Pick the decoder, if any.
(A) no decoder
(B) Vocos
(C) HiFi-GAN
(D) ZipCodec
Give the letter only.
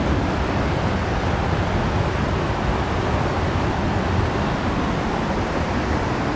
A